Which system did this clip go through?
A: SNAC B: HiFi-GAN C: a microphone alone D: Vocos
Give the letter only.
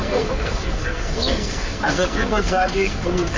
A